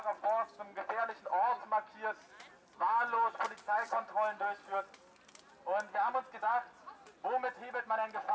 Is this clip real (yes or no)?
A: yes